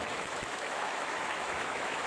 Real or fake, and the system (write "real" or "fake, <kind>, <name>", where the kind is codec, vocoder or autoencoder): fake, autoencoder, DAC-VAE